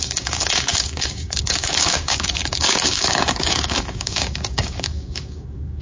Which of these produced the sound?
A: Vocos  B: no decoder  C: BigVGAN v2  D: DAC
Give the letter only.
D